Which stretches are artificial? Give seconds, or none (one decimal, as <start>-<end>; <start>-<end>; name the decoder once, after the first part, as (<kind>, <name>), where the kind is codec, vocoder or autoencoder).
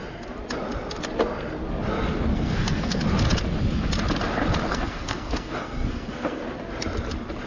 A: 2.3-3.0 (codec, SNAC); 4.7-6.4